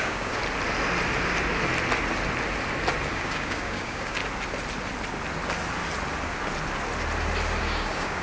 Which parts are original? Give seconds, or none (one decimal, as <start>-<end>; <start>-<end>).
0.4-3.1; 4.2-7.6